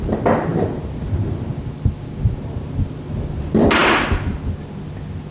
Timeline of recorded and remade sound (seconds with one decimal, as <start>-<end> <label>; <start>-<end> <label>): 0.0-5.3 recorded